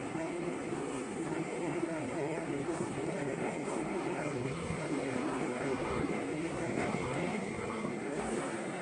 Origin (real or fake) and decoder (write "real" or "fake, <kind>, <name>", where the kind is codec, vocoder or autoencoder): fake, codec, SNAC